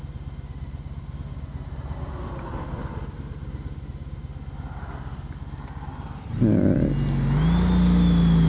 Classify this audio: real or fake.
real